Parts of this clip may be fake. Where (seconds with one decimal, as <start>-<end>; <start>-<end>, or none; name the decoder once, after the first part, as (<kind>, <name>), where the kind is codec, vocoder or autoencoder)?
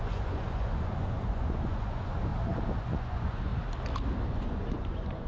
0.0-2.3 (vocoder, Vocos); 2.8-3.5; 4.3-5.3